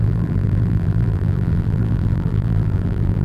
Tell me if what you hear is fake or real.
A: fake